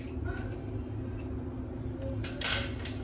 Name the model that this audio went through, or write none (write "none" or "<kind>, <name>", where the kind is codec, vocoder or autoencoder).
none